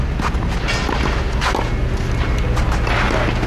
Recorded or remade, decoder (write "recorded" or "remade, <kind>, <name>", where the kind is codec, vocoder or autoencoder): recorded